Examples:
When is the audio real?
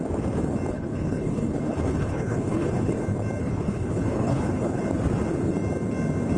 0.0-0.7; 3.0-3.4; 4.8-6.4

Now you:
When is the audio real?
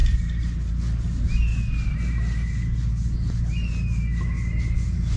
0.0-5.2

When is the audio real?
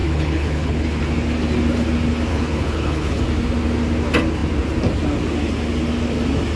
1.0-2.3; 3.2-6.6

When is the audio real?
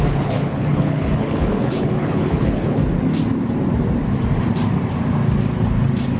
2.8-6.2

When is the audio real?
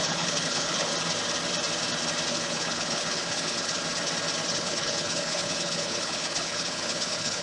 0.9-2.3; 3.8-4.5